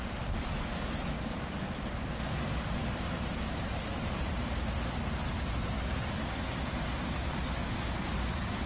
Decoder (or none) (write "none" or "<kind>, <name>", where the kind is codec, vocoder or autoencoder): none